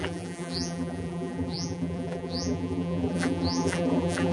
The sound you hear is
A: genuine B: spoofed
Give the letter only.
B